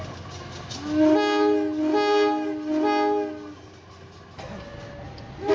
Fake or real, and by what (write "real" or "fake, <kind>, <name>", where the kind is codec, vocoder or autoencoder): real